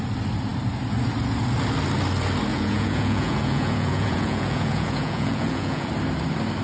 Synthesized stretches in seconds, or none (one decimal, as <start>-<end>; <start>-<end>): 2.5-5.9